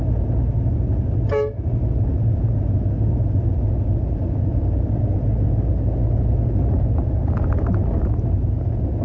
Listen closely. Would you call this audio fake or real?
real